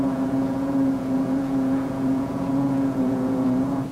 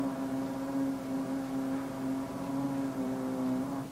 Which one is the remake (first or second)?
first